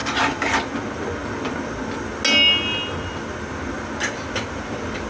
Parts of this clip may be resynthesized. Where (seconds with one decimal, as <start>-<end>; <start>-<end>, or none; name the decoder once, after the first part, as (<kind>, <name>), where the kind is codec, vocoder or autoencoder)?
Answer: 0.0-0.6 (vocoder, BigVGAN v2)